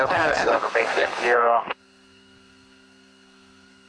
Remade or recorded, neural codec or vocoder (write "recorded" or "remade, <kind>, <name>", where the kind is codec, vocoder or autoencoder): remade, codec, SNAC